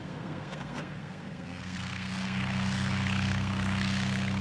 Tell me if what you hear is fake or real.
fake